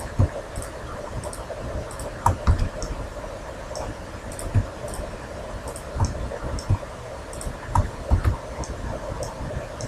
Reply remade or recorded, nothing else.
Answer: recorded